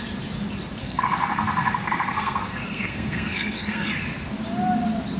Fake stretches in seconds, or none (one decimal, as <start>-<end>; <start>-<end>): 0.8-3.9

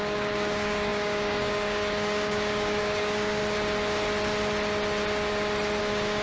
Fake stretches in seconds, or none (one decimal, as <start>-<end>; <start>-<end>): 0.0-3.4; 5.8-6.2

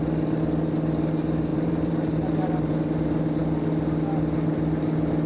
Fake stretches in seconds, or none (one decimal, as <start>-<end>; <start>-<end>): 1.5-2.7